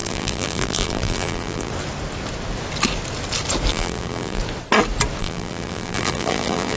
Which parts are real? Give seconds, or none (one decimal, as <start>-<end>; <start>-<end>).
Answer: 1.7-3.7; 4.4-5.2